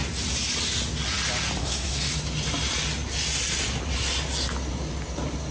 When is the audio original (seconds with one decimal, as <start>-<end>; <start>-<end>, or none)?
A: 0.0-1.6; 2.1-5.5